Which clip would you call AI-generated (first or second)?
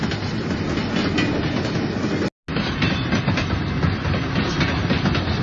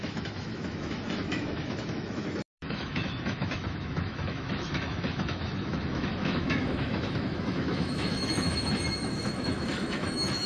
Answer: second